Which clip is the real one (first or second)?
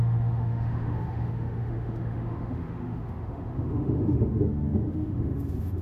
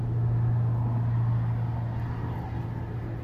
second